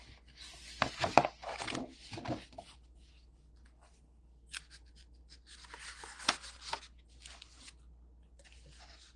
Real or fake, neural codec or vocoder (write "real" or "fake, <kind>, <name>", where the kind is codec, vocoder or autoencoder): real